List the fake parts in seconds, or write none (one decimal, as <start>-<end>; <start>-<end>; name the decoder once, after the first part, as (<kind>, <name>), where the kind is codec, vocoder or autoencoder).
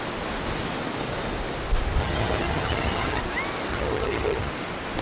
2.0-3.2 (vocoder, HiFi-GAN); 3.7-4.5